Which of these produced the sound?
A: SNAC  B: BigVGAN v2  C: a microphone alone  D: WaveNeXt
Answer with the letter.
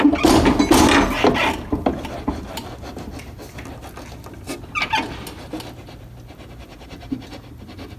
C